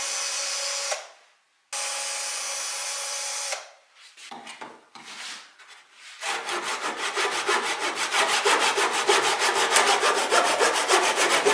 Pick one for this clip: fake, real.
real